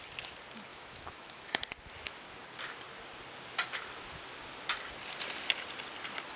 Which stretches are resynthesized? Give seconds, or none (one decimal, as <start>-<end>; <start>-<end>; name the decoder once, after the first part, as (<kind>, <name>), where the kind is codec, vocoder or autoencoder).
0.7-1.6 (autoencoder, DAC-VAE)